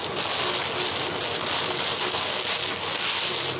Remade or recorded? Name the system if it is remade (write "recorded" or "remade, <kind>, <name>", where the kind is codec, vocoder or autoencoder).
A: recorded